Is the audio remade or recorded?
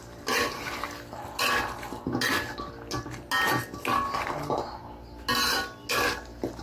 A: recorded